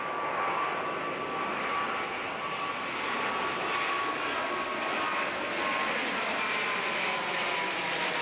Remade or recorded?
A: recorded